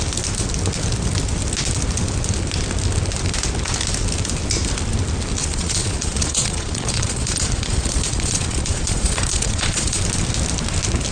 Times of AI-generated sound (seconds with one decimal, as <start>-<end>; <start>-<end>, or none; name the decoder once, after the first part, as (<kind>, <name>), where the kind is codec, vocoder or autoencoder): 5.4-10.0 (vocoder, Vocos)